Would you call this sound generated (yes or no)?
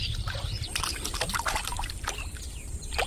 yes